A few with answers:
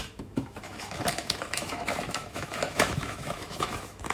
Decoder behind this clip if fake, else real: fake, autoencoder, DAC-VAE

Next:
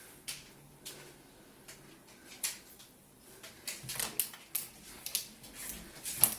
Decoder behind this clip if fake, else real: real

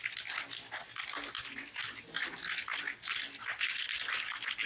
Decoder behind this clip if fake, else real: real